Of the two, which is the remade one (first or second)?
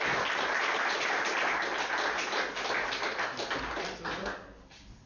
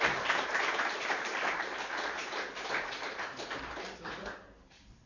second